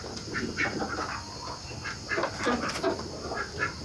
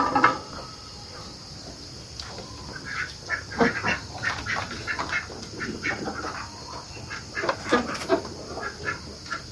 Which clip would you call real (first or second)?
first